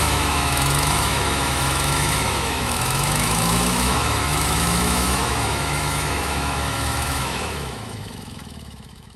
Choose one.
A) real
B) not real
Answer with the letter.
B